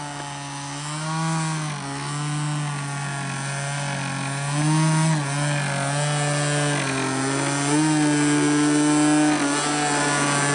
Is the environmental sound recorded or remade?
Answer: recorded